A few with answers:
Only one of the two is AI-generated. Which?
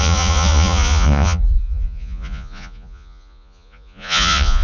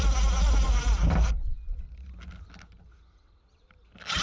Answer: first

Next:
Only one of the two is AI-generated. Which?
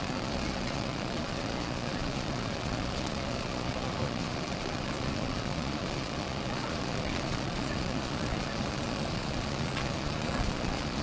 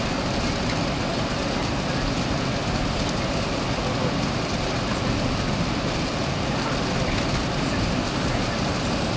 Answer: first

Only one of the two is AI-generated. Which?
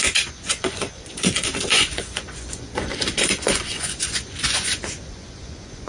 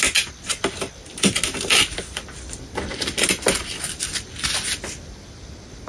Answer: first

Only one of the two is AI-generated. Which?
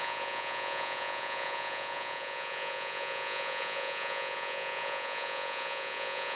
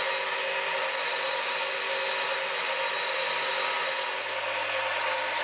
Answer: first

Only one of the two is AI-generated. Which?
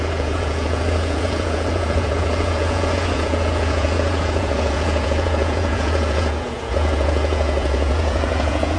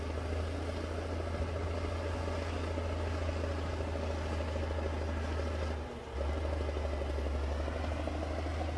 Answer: first